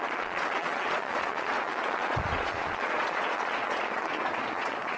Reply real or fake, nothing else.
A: fake